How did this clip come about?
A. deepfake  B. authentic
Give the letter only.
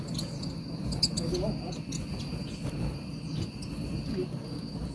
B